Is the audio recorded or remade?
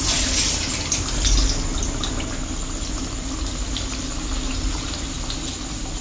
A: recorded